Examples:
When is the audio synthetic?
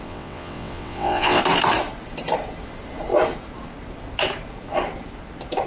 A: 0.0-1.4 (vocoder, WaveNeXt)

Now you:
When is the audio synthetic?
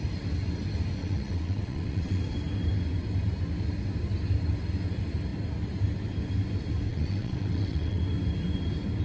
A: 1.0-2.2 (vocoder, WaveNeXt); 6.9-8.0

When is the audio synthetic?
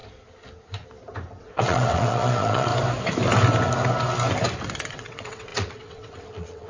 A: 1.4-2.7 (vocoder, WaveNeXt); 4.9-6.7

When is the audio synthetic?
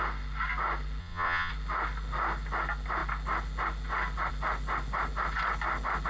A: 1.0-1.5 (vocoder, WaveNeXt)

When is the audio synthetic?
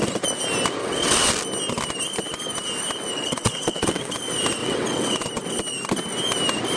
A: 0.8-1.3 (vocoder, WaveNeXt); 3.1-4.1; 4.6-5.2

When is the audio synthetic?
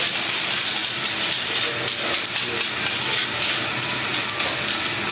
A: none